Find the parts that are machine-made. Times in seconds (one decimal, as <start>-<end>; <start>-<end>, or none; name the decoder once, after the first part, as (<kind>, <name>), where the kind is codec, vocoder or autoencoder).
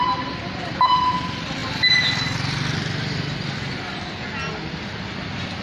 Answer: none